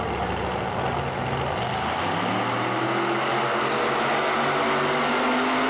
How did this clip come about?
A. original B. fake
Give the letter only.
A